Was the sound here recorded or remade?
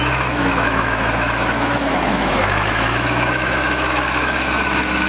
remade